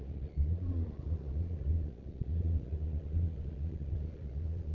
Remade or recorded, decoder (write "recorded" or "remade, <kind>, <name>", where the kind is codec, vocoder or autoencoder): remade, vocoder, Vocos